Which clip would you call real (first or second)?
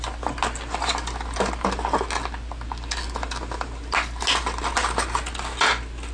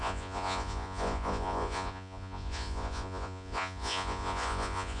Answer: first